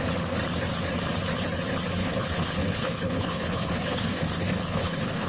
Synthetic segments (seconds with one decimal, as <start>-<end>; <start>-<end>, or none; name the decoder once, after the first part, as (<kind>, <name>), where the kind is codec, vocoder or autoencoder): 2.0-5.3 (codec, HILCodec)